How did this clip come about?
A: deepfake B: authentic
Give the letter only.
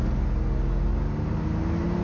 B